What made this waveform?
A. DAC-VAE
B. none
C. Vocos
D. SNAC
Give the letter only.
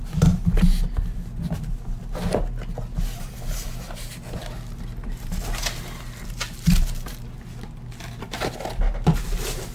B